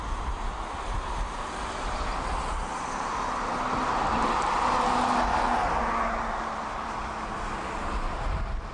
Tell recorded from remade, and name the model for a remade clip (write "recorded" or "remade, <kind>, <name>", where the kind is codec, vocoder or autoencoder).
recorded